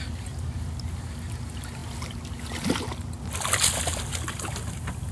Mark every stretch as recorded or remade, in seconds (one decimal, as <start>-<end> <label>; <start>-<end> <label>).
0.0-5.1 recorded